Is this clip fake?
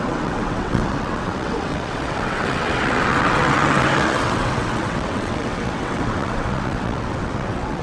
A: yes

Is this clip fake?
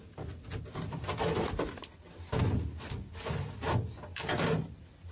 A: no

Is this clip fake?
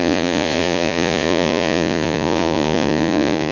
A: yes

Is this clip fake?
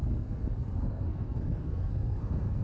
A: yes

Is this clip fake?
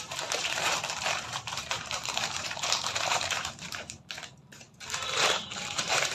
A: yes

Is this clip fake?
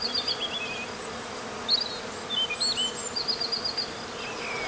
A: no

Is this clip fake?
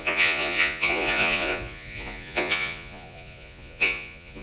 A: yes